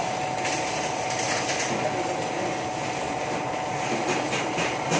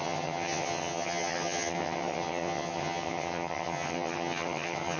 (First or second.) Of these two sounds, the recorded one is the first